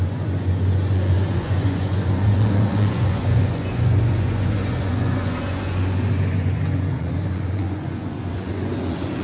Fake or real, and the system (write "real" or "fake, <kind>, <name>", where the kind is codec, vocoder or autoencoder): fake, vocoder, Vocos